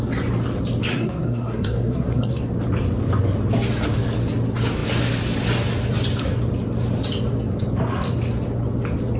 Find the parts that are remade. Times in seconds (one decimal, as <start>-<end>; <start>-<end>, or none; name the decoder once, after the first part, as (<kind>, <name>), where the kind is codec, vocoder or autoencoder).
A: 0.9-2.4 (codec, SNAC)